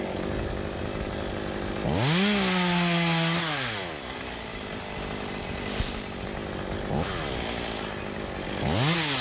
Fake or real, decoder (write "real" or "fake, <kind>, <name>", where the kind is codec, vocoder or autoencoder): real